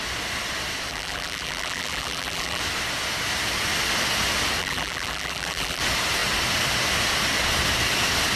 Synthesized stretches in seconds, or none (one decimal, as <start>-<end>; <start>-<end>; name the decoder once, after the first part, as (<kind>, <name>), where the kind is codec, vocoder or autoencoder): 0.9-2.6 (vocoder, BigVGAN v2); 4.6-5.8

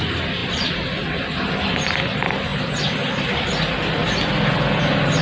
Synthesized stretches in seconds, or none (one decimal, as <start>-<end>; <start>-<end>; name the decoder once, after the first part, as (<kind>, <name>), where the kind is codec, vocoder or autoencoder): 0.4-1.6 (vocoder, BigVGAN v2)

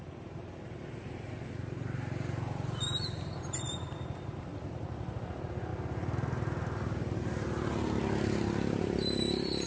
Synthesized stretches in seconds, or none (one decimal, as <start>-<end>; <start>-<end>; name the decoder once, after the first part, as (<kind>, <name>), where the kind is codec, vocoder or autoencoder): 0.0-5.7 (vocoder, BigVGAN v2); 8.8-9.7

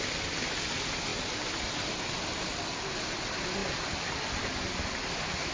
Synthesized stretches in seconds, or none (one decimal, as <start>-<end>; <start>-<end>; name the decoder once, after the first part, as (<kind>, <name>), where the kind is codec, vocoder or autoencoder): none

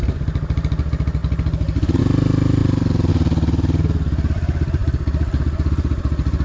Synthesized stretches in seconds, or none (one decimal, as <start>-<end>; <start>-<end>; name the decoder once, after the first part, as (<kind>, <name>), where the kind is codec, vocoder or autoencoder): 2.6-3.1 (vocoder, BigVGAN v2)

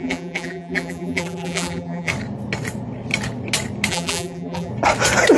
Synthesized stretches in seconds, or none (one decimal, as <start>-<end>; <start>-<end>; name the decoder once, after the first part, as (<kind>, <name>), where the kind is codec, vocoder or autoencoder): 0.0-2.1 (vocoder, BigVGAN v2); 3.9-4.7